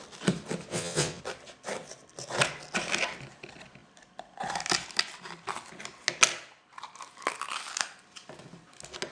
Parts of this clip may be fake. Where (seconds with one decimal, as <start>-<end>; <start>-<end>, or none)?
0.7-1.2